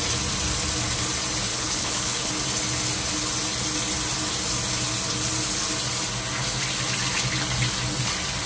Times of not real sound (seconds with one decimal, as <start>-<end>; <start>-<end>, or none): 1.5-2.3